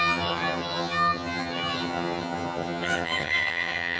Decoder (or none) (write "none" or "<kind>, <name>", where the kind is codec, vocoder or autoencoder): vocoder, HiFi-GAN